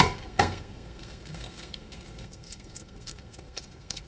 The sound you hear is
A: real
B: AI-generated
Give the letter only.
B